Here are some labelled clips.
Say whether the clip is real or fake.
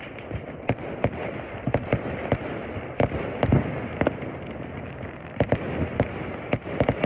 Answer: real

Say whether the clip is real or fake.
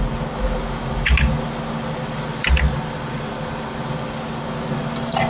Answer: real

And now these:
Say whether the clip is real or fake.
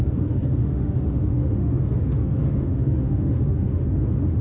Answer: fake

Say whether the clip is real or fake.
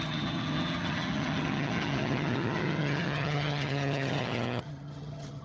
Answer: fake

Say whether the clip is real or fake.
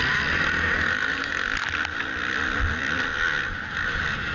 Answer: real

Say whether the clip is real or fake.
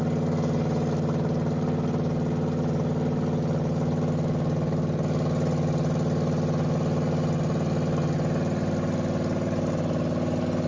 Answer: real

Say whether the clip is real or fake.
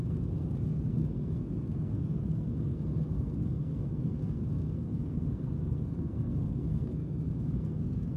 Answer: fake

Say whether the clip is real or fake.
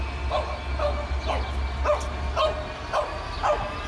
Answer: real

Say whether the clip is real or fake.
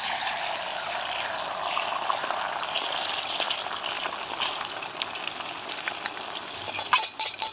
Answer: real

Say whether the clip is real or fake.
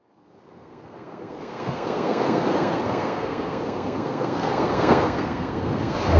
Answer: fake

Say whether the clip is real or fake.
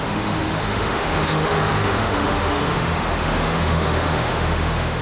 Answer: fake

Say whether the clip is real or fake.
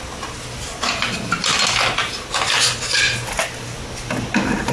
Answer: real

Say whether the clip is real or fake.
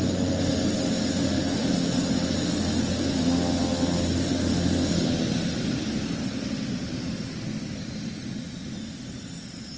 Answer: real